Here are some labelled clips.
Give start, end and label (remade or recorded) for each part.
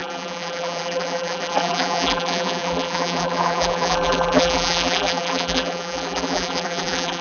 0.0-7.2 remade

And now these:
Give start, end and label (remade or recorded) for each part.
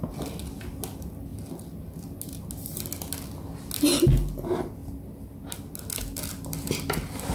0.0-7.3 recorded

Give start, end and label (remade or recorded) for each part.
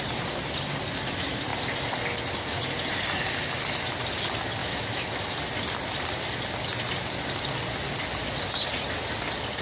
0.0-4.6 recorded; 4.6-5.2 remade; 5.2-9.6 recorded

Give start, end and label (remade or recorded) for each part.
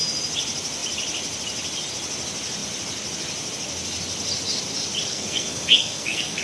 0.0-5.1 recorded; 5.1-6.4 remade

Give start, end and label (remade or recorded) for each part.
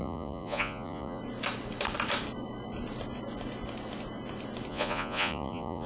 0.0-1.2 remade; 1.2-4.7 recorded; 4.7-5.9 remade